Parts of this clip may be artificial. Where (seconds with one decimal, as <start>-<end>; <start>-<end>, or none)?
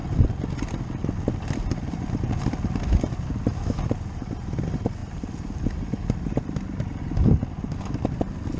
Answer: none